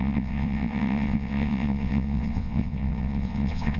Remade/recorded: remade